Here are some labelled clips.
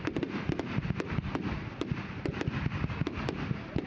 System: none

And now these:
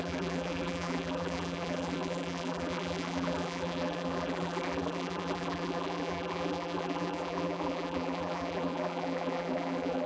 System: vocoder, BigVGAN v2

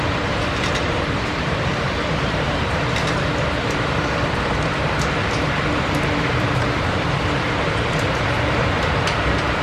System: vocoder, BigVGAN v2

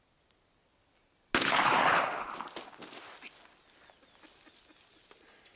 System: none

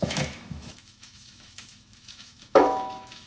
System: autoencoder, DAC-VAE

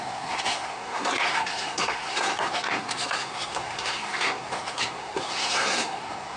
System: codec, SNAC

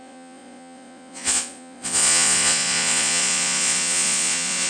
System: vocoder, Vocos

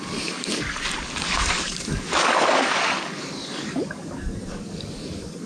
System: codec, DAC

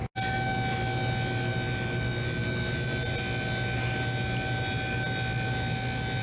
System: none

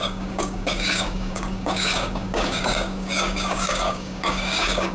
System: codec, DAC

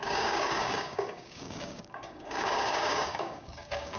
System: codec, DAC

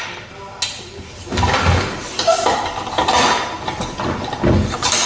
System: none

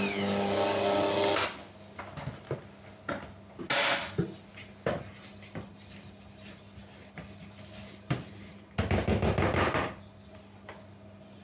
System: none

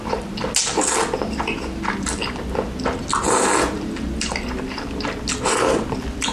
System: none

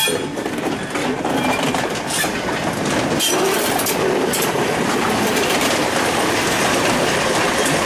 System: vocoder, BigVGAN v2